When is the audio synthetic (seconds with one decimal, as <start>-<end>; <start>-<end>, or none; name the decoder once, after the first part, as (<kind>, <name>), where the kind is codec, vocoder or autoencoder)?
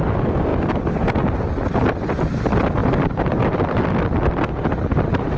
none